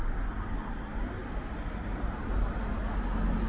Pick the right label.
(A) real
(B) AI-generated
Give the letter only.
A